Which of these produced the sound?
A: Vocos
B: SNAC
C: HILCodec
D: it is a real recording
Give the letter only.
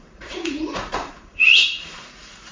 A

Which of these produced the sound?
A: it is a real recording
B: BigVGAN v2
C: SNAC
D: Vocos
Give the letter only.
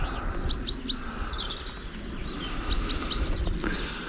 A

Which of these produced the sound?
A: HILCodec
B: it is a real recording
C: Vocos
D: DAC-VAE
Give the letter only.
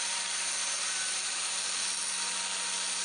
B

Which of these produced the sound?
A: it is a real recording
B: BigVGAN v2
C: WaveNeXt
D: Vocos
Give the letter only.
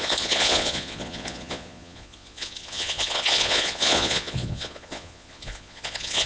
D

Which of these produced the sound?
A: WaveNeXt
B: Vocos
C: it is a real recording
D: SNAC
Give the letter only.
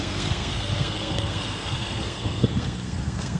D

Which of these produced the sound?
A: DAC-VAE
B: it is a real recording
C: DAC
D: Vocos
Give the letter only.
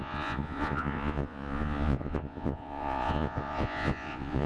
D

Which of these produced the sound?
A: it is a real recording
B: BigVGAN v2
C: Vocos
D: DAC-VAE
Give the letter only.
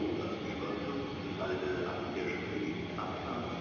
A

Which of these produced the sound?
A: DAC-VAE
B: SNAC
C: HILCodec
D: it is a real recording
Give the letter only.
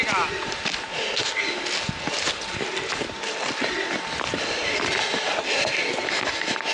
D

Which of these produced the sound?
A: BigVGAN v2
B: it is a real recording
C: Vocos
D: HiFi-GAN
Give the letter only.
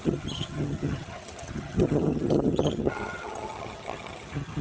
D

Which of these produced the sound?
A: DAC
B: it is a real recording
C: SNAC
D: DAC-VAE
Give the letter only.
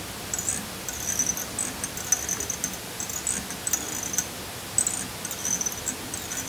B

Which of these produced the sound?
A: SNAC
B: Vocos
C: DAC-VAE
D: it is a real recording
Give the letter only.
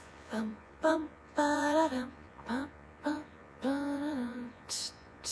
B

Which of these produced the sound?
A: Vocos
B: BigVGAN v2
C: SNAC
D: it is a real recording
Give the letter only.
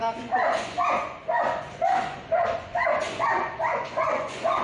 A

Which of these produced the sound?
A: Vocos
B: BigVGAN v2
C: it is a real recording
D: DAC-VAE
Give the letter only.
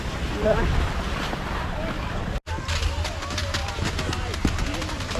C